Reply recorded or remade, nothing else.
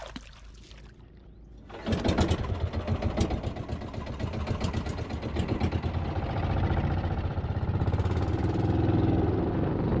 recorded